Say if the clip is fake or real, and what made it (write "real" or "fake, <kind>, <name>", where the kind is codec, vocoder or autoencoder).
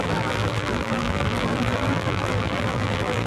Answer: fake, vocoder, BigVGAN v2